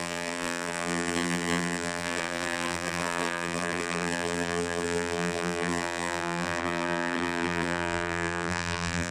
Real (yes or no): no